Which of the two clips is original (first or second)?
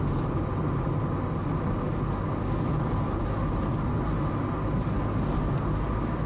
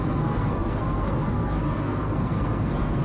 first